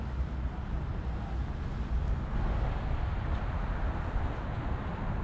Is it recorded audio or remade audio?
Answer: recorded